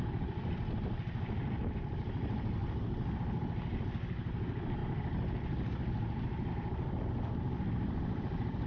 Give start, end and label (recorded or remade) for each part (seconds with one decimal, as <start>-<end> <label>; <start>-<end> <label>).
0.0-8.7 recorded